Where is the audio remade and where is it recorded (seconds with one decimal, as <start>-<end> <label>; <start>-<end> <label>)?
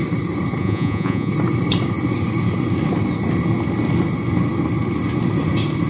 0.0-0.6 recorded; 0.6-1.3 remade; 1.3-5.9 recorded